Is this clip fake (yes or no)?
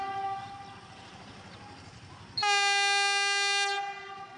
no